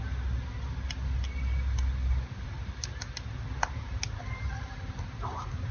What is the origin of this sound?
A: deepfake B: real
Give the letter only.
B